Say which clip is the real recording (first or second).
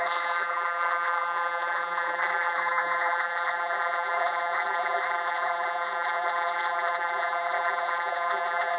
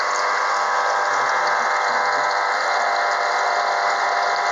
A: second